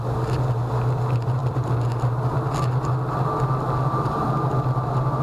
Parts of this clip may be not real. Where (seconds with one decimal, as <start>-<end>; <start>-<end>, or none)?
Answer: none